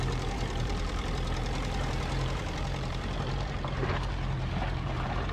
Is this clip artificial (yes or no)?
yes